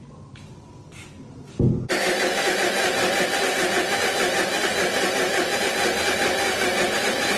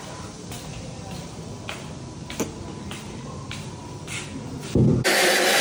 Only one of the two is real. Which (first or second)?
first